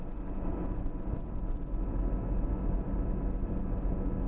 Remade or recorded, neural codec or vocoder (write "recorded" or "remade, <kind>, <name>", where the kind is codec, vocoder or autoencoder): recorded